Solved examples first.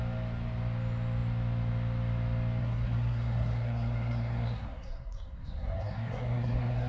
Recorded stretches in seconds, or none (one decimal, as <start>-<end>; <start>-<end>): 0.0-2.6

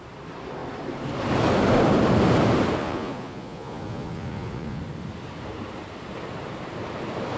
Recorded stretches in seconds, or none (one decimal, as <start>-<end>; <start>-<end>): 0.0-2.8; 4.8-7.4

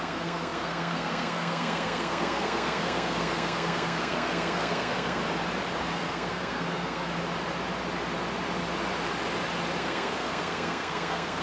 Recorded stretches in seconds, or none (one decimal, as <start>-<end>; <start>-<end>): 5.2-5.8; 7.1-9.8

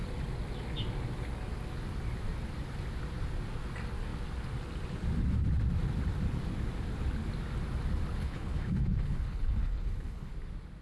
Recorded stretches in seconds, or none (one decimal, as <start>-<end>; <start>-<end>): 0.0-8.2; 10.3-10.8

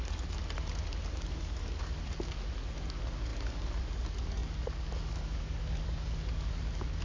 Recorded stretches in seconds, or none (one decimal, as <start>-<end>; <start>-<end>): 0.4-1.1